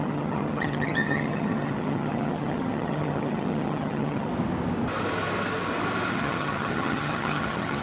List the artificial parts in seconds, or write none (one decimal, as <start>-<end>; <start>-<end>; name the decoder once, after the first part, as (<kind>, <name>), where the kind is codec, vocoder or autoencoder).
0.0-4.3 (vocoder, HiFi-GAN); 6.1-7.8